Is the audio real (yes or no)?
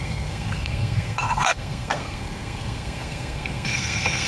no